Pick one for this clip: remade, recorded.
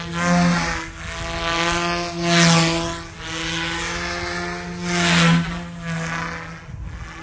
recorded